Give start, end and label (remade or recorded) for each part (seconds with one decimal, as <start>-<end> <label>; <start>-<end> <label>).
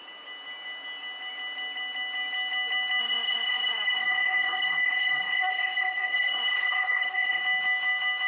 0.0-3.0 recorded; 3.0-7.4 remade; 7.4-8.3 recorded